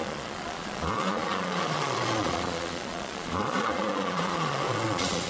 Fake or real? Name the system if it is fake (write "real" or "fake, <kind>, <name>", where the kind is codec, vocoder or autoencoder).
fake, vocoder, Vocos